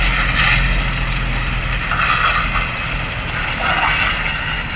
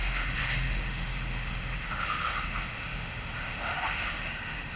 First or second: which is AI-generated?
second